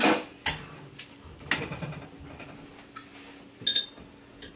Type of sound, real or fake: real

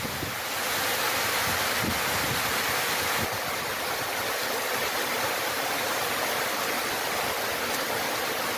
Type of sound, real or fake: real